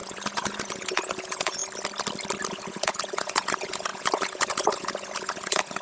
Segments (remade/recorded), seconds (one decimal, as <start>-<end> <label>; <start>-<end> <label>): 0.0-1.6 remade; 1.6-2.5 recorded; 2.5-5.8 remade